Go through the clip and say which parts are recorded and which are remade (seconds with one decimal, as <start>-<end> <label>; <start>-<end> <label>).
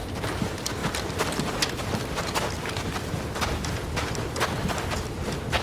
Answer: 0.0-5.6 recorded